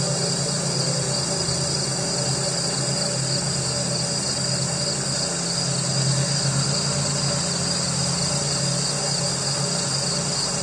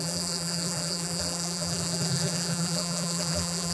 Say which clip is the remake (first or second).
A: second